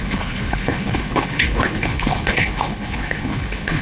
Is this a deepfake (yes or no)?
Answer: yes